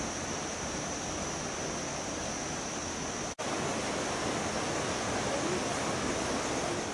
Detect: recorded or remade recorded